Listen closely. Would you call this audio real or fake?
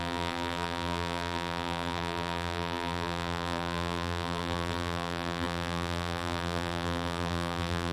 fake